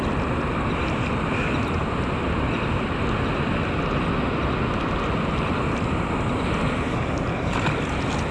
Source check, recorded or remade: recorded